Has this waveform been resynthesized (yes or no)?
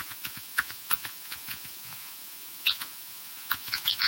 yes